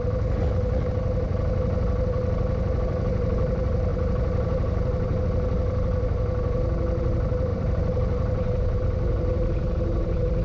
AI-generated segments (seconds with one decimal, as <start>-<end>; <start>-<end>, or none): 3.9-5.2; 7.5-8.8